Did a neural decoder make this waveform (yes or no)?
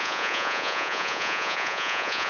yes